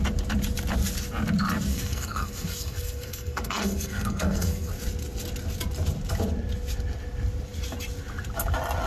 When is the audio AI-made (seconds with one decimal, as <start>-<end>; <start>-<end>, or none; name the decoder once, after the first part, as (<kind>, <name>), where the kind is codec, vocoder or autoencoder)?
1.7-4.7 (codec, SNAC)